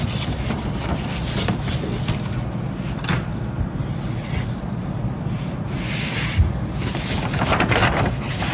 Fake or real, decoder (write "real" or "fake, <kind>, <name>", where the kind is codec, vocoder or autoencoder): real